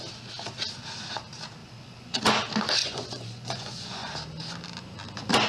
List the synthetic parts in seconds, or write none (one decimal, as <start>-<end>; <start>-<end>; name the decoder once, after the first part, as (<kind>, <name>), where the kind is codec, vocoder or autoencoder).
1.6-2.2 (vocoder, Vocos); 2.8-4.1